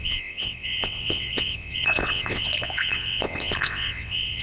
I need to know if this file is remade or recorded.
remade